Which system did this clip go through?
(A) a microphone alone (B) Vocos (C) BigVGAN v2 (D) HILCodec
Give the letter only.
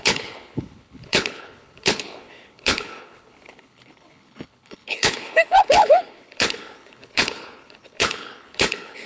D